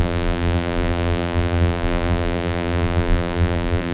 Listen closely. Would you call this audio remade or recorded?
remade